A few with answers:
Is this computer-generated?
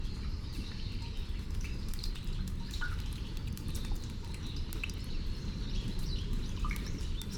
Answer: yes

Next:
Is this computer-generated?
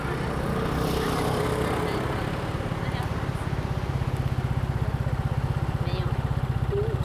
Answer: no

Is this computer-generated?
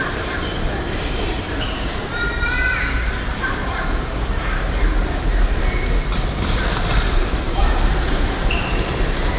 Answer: yes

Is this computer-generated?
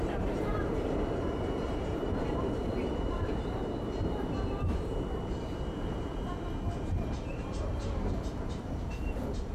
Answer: yes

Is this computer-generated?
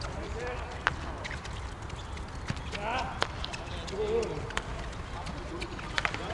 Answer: no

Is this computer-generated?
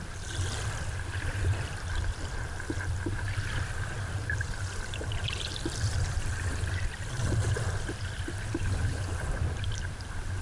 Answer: yes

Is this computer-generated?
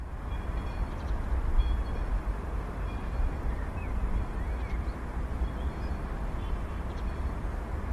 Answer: yes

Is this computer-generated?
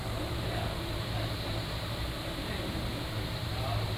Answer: yes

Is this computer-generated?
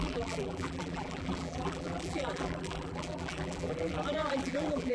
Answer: yes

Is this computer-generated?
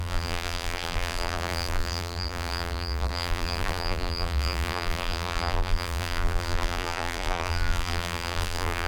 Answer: yes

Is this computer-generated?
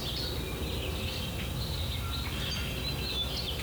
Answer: no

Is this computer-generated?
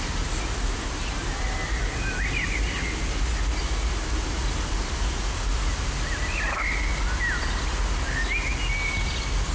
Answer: no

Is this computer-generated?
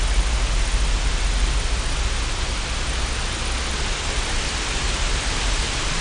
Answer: no